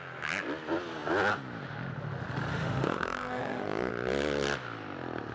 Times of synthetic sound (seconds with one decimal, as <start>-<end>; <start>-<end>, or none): 2.5-3.9